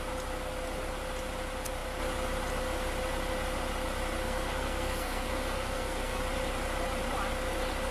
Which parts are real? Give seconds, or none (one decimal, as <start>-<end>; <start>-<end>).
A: 0.0-4.2; 6.2-7.9